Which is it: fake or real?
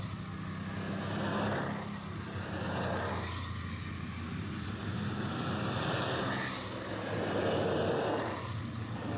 real